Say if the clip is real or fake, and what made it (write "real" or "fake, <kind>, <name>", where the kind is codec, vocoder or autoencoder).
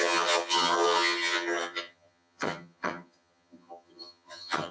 fake, vocoder, HiFi-GAN